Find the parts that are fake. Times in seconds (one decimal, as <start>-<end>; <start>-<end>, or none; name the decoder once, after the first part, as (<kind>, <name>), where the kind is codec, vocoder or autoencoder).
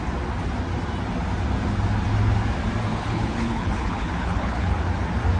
2.9-4.8 (codec, HILCodec)